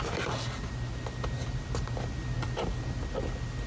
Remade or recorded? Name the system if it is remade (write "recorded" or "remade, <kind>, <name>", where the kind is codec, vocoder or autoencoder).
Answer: recorded